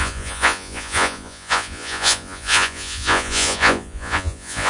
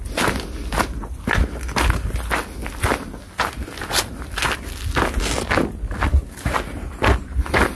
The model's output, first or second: first